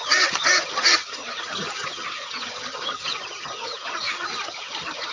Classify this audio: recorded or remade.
remade